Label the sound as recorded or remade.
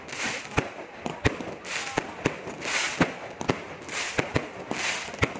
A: recorded